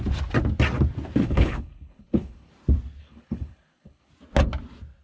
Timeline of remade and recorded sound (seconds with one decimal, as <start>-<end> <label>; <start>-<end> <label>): 0.0-1.2 recorded; 1.2-2.5 remade; 2.5-3.0 recorded; 3.0-4.1 remade; 4.1-5.0 recorded